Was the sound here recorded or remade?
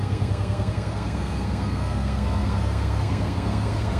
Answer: remade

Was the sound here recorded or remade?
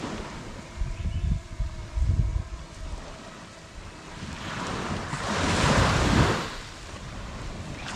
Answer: remade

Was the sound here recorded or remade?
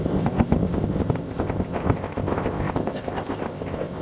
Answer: remade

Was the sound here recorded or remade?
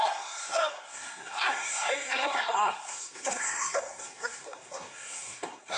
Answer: remade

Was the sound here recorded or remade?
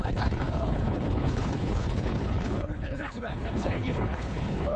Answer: remade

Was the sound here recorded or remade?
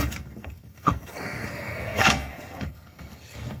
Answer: remade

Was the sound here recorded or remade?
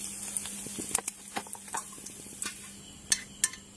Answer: recorded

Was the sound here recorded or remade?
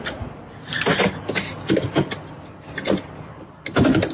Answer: recorded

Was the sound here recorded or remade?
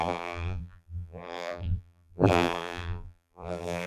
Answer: remade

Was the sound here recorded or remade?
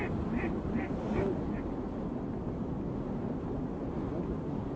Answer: recorded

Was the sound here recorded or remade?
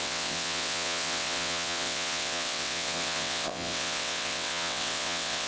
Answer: remade